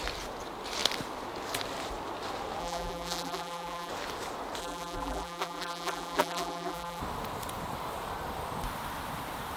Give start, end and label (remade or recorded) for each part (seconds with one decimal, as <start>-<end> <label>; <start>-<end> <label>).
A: 0.0-2.6 recorded; 2.6-3.9 remade; 3.9-4.6 recorded; 4.6-7.0 remade; 7.0-9.6 recorded